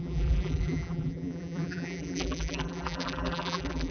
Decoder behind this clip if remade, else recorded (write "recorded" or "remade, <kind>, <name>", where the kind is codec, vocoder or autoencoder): remade, vocoder, BigVGAN v2